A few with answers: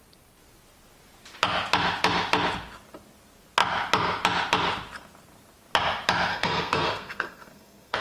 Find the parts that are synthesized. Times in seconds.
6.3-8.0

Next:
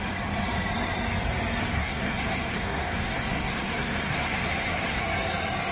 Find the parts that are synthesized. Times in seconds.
1.6-5.0